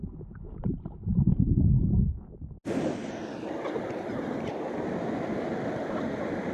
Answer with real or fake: real